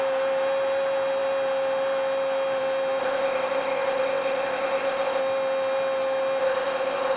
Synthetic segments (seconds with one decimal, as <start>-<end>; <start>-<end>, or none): 3.0-5.2; 6.4-7.2